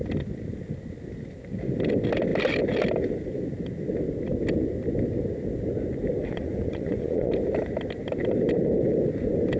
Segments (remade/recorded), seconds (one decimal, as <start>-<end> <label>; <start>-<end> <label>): 0.0-6.2 recorded; 6.2-7.3 remade; 7.3-9.6 recorded